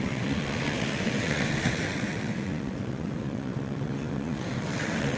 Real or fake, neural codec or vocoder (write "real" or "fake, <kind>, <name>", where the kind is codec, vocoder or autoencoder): fake, vocoder, WaveNeXt